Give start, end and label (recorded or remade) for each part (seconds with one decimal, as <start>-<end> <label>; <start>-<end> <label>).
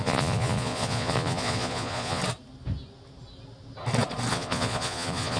0.0-2.2 remade; 2.2-4.3 recorded; 4.3-5.4 remade